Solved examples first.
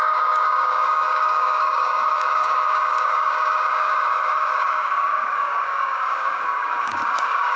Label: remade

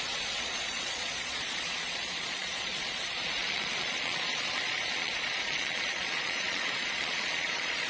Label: remade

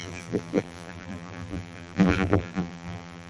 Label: remade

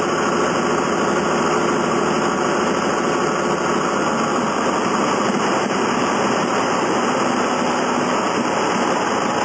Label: recorded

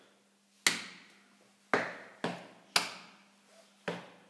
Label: recorded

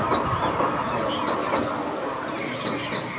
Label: recorded